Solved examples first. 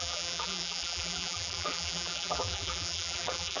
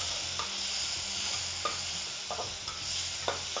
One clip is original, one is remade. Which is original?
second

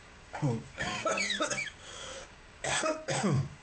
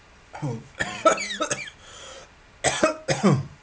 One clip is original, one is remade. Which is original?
second